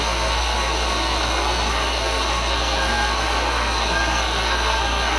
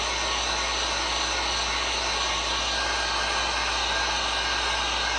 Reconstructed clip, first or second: first